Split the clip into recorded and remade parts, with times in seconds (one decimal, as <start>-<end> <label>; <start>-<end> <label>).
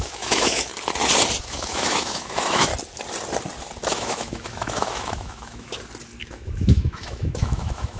0.0-0.7 remade; 0.7-1.4 recorded; 1.4-2.7 remade; 2.7-3.9 recorded; 3.9-5.7 remade; 5.7-6.2 recorded; 6.2-8.0 remade